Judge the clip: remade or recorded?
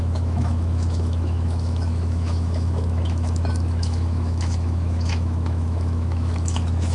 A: remade